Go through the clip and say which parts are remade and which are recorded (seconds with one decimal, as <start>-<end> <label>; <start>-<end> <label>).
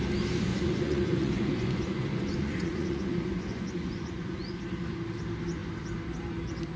0.0-0.5 recorded; 0.5-4.6 remade; 4.6-6.8 recorded